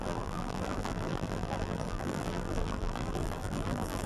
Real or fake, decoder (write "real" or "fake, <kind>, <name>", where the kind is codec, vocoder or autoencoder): fake, vocoder, BigVGAN v2